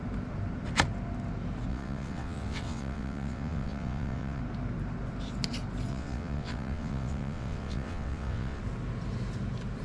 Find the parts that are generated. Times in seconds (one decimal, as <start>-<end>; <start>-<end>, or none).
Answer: 1.7-4.4; 5.9-8.6